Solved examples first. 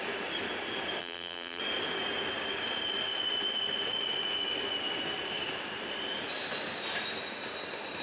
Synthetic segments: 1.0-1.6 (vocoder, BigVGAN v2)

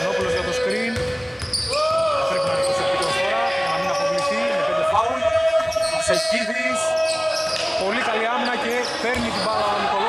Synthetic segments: 4.9-6.7 (vocoder, BigVGAN v2)

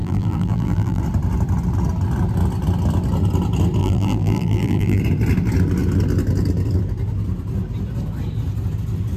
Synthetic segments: 0.0-1.0 (vocoder, BigVGAN v2); 3.8-5.0

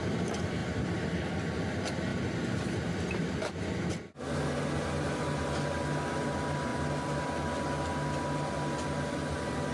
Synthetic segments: 6.7-7.2 (vocoder, BigVGAN v2)

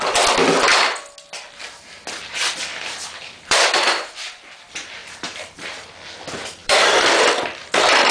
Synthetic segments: 2.7-4.1 (vocoder, BigVGAN v2); 5.0-5.9; 6.6-7.3